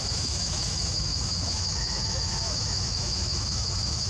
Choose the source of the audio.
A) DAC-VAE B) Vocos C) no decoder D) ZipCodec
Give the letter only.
A